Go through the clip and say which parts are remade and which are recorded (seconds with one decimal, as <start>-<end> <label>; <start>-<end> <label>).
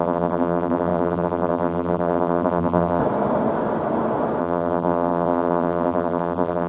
0.0-3.0 remade; 3.0-4.4 recorded; 4.4-6.7 remade